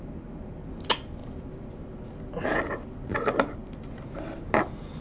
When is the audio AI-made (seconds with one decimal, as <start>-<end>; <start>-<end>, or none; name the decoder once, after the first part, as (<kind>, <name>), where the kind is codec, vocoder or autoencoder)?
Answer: 1.2-1.9 (vocoder, BigVGAN v2)